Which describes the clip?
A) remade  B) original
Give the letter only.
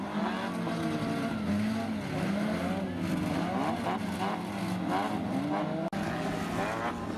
B